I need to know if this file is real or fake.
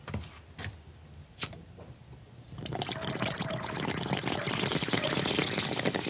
real